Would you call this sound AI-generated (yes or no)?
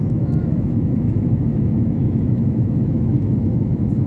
yes